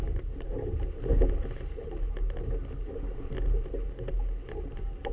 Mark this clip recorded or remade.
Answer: recorded